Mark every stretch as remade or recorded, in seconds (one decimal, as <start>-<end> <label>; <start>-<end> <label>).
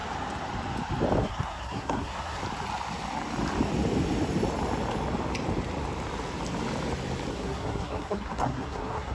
0.0-1.2 recorded; 1.2-2.4 remade; 2.4-7.3 recorded; 7.3-9.1 remade